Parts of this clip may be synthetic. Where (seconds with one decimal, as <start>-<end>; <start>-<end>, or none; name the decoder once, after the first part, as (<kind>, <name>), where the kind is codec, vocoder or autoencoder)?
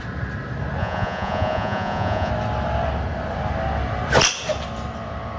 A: 0.8-2.3 (vocoder, Vocos)